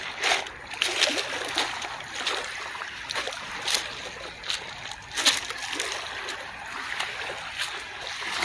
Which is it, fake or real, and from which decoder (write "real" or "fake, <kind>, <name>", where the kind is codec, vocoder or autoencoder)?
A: real